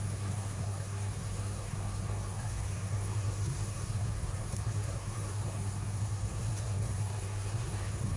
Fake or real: fake